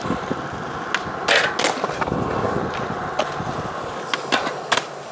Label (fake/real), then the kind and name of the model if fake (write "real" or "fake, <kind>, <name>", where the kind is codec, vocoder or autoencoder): real